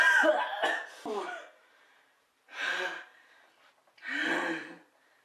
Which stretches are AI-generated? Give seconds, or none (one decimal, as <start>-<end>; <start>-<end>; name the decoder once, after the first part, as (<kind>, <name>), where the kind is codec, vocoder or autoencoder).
1.6-3.7 (vocoder, BigVGAN v2); 4.2-5.2

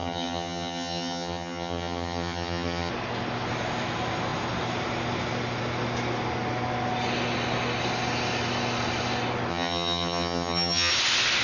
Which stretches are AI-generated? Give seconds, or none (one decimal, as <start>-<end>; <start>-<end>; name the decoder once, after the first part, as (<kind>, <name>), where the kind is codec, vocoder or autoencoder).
0.0-2.9 (vocoder, HiFi-GAN); 9.5-10.9

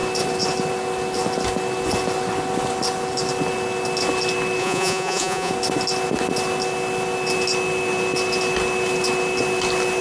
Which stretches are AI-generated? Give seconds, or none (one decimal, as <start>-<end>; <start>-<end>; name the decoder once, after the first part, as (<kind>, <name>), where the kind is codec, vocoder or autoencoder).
4.6-5.5 (vocoder, Vocos)

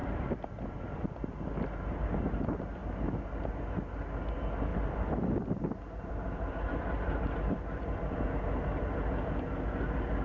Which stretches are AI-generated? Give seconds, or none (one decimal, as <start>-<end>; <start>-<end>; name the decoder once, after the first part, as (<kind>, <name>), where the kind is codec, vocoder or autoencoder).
0.0-1.1 (vocoder, BigVGAN v2); 4.7-8.2

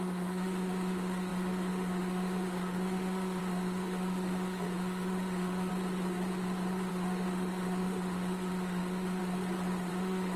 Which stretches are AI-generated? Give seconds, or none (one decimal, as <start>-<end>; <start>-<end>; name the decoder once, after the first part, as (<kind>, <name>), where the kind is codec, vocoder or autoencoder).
0.0-5.7 (autoencoder, DAC-VAE); 6.9-9.2; 9.9-10.4

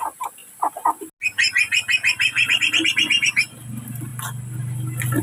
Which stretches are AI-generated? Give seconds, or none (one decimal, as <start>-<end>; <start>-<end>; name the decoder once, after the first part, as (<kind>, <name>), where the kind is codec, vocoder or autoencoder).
none

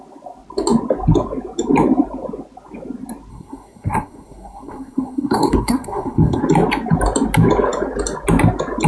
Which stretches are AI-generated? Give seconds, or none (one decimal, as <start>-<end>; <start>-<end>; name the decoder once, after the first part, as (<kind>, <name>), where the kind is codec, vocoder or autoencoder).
3.3-6.4 (codec, SNAC)